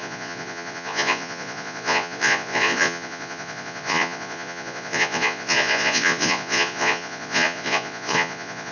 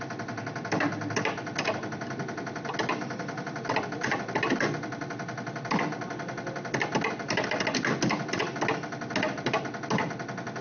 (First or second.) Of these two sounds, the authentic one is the second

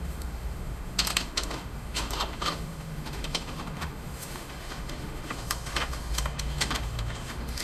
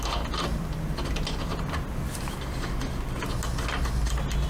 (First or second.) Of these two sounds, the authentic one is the second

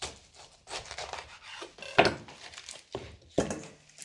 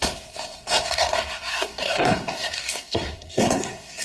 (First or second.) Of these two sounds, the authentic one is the first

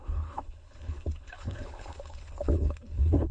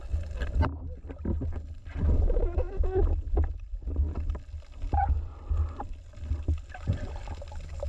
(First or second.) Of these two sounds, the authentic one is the second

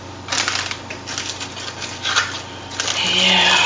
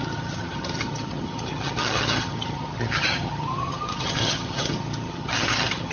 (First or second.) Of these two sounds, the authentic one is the first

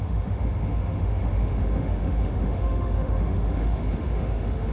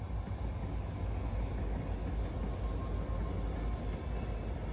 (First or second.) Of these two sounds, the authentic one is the second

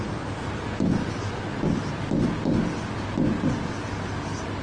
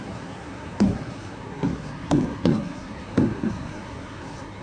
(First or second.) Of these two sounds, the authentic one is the first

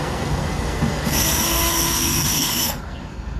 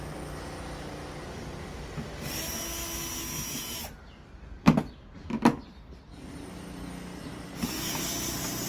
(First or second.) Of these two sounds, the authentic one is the second